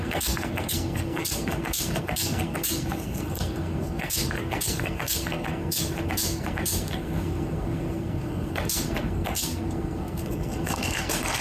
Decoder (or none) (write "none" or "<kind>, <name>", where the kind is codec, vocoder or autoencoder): codec, SNAC